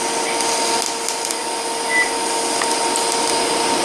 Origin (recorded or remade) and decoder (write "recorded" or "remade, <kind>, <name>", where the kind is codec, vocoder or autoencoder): recorded